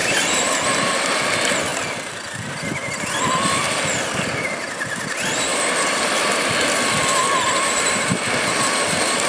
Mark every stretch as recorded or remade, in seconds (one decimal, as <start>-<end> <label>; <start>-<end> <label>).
0.0-1.2 remade; 1.2-5.5 recorded; 5.5-6.1 remade; 6.1-9.3 recorded